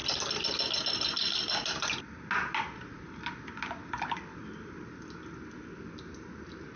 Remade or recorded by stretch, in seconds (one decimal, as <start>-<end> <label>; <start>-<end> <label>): 0.0-6.8 recorded